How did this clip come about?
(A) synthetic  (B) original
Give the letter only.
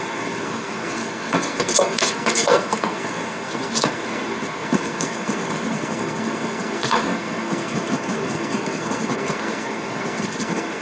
A